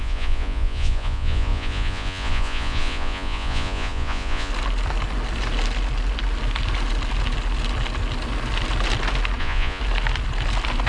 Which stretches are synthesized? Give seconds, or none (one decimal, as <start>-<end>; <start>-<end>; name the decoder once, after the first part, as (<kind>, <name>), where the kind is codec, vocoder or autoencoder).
0.0-4.5 (vocoder, Vocos); 9.4-9.8